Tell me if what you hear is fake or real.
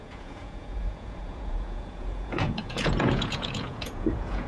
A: fake